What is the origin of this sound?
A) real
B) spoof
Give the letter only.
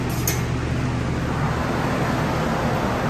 A